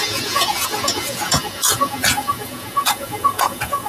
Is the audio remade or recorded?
remade